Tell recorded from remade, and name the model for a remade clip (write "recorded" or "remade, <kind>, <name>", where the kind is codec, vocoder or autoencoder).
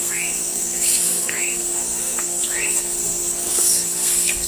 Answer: remade, codec, SNAC